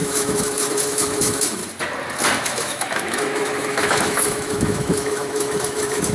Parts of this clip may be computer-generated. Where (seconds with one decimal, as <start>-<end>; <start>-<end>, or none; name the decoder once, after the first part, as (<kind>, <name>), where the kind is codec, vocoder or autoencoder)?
0.0-1.6 (autoencoder, DAC-VAE); 2.4-6.1